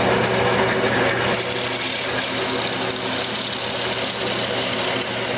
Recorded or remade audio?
remade